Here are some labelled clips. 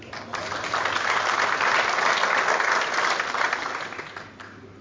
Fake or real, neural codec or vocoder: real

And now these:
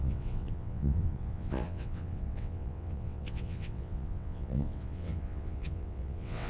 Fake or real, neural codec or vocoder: fake, vocoder, WaveNeXt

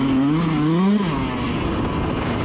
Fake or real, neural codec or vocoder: real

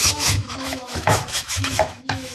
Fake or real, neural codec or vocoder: fake, autoencoder, DAC-VAE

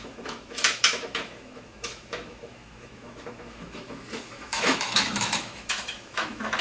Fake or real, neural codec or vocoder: fake, autoencoder, DAC-VAE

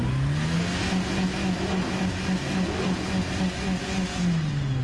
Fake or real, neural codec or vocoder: real